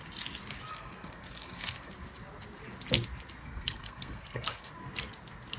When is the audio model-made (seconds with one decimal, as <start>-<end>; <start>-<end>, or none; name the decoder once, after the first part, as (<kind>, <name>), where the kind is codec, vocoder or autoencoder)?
0.7-1.9 (codec, SNAC); 3.4-4.7